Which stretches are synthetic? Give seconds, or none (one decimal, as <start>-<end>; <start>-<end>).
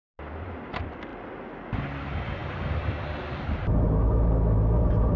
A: none